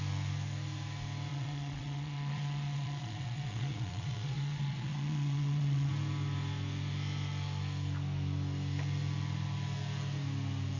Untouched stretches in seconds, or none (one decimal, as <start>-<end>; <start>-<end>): 0.0-1.3; 5.9-10.8